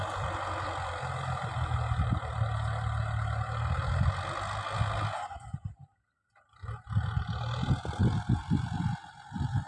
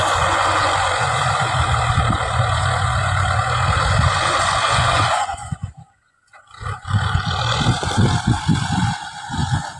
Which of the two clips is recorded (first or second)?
first